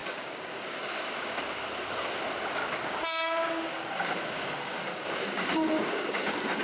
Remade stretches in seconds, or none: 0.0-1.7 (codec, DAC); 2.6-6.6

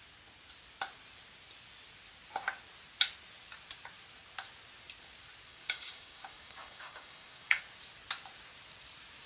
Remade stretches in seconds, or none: 5.5-7.6 (codec, DAC)

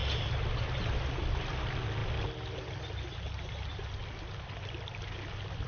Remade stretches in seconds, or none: none

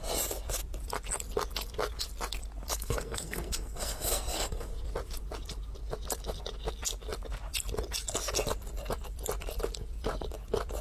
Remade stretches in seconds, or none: 2.7-4.7 (codec, SNAC)

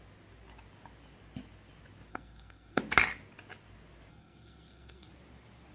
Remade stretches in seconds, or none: 2.1-2.8 (codec, SNAC); 4.1-5.1

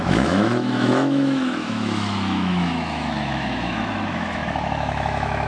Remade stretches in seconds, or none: 0.0-5.5 (autoencoder, DAC-VAE)

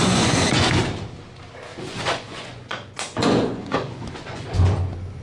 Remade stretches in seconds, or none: 0.0-0.8 (vocoder, Vocos); 1.7-4.8

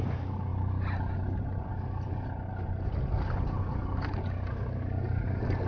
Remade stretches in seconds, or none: none